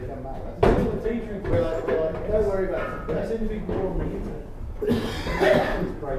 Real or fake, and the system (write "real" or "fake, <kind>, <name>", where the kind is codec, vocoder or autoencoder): real